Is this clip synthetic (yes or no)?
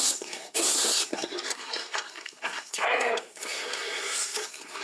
yes